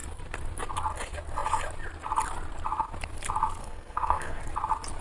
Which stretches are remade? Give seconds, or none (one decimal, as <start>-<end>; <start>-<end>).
3.6-4.4